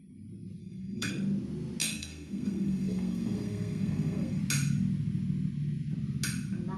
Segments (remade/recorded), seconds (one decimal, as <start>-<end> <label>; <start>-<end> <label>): 0.0-0.6 recorded; 0.6-1.1 remade; 1.1-1.8 recorded; 1.8-4.4 remade; 4.4-6.8 recorded